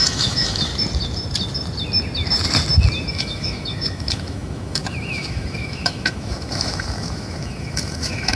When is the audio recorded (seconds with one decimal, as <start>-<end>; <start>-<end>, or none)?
0.7-3.1